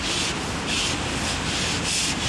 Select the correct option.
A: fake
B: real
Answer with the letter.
B